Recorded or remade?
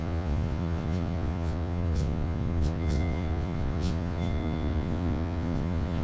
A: remade